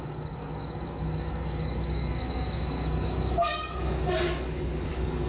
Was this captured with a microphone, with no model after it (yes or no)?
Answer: no